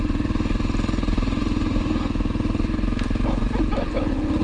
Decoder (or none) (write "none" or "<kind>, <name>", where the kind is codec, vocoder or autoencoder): none